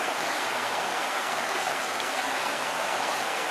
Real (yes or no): no